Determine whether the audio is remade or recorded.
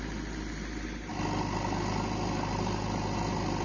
recorded